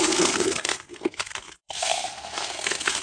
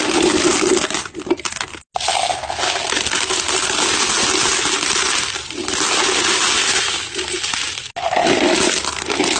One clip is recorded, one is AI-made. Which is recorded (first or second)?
second